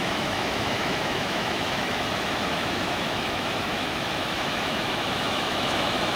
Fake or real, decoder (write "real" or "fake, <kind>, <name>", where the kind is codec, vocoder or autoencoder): fake, autoencoder, DAC-VAE